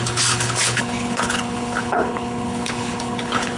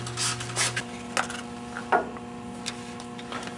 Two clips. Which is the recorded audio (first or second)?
second